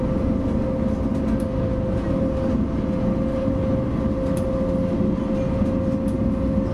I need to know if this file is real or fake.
real